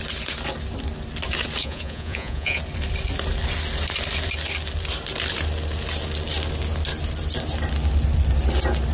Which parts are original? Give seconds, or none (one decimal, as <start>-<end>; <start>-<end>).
0.0-1.6; 2.6-8.9